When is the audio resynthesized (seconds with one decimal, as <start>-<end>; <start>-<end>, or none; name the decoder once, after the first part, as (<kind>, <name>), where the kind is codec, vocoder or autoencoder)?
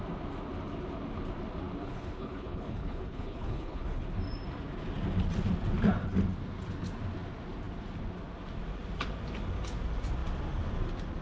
1.8-4.0 (codec, HILCodec)